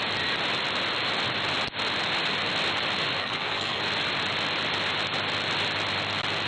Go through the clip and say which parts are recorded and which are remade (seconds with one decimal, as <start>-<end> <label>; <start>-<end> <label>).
0.0-3.2 recorded; 3.2-3.8 remade; 3.8-6.5 recorded